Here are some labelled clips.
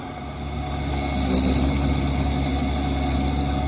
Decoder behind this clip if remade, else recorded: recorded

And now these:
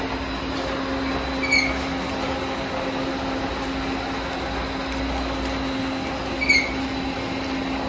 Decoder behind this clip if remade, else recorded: recorded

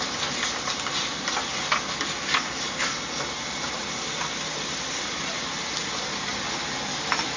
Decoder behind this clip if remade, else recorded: recorded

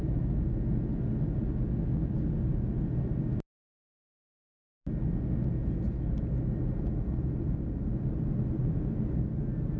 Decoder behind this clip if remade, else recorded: recorded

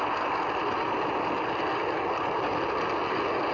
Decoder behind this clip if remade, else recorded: recorded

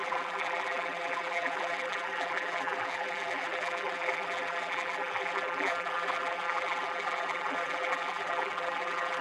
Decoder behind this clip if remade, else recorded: remade, vocoder, BigVGAN v2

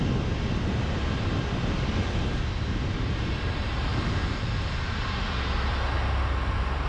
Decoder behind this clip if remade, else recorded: recorded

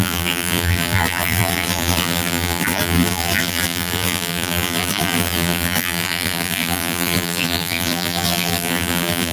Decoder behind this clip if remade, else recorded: remade, vocoder, BigVGAN v2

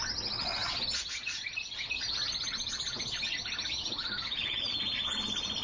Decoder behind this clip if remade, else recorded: recorded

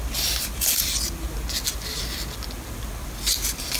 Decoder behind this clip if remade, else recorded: recorded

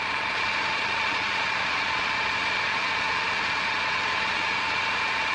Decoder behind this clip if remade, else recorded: remade, vocoder, Vocos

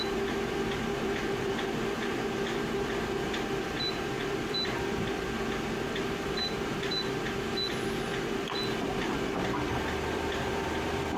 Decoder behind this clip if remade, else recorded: remade, vocoder, BigVGAN v2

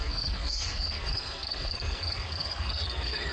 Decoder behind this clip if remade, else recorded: remade, codec, SNAC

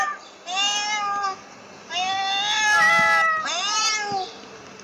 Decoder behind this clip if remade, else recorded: recorded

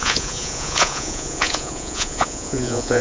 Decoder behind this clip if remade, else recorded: remade, vocoder, Vocos